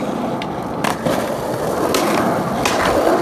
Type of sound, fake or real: real